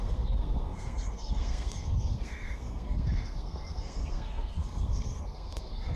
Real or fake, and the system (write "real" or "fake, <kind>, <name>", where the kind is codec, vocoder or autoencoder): fake, codec, SNAC